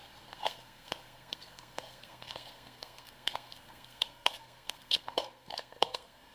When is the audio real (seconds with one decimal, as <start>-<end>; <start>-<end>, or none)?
none